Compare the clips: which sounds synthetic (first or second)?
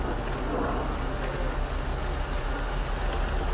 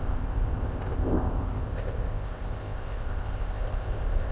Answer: second